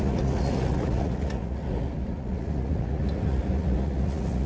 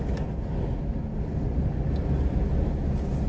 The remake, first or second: first